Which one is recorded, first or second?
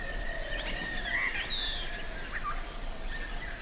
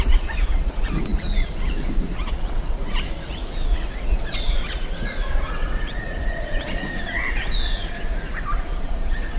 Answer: first